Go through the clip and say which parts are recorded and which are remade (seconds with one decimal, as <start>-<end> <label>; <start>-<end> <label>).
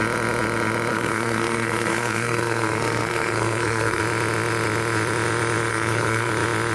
0.0-0.9 recorded; 0.9-4.0 remade; 4.0-5.7 recorded; 5.7-6.3 remade; 6.3-6.7 recorded